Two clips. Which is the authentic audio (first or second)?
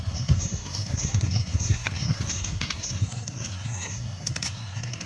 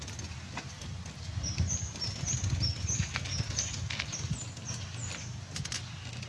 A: second